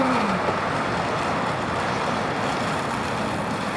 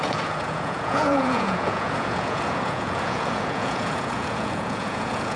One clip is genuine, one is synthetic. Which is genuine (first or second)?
first